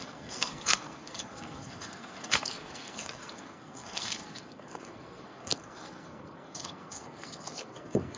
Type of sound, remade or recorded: remade